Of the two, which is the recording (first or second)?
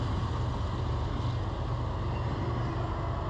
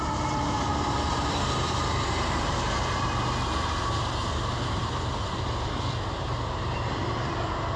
first